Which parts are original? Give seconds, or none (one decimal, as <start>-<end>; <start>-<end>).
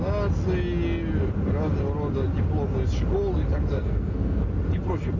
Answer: 0.0-3.7; 4.4-5.2